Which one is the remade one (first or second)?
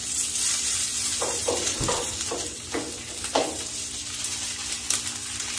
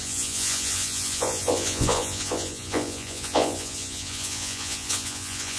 second